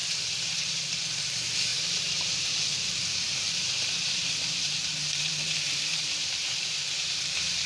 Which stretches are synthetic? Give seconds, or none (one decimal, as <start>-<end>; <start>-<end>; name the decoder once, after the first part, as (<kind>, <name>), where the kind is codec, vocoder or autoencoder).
0.5-7.7 (vocoder, BigVGAN v2)

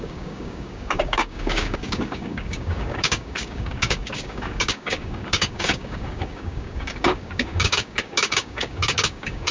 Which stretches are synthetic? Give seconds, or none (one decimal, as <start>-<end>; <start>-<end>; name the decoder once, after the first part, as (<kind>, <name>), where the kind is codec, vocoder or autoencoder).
0.0-9.5 (codec, DAC)

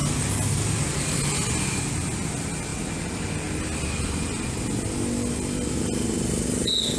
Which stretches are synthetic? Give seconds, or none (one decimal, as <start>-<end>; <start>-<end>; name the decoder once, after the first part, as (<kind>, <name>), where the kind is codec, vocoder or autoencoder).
none